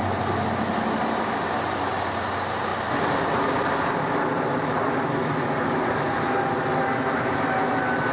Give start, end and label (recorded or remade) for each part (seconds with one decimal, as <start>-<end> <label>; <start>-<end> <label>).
0.0-8.1 recorded